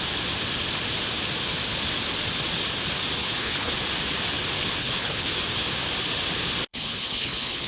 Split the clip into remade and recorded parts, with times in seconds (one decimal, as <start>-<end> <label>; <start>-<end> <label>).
0.0-3.2 recorded; 3.2-3.7 remade; 3.7-4.8 recorded; 4.8-5.3 remade; 5.3-6.7 recorded; 6.7-7.7 remade